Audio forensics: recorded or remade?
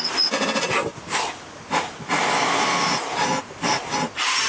recorded